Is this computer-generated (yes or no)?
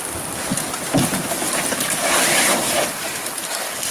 no